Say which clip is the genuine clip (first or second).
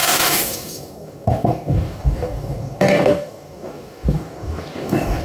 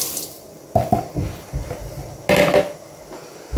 second